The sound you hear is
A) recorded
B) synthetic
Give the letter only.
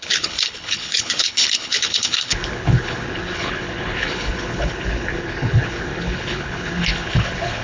B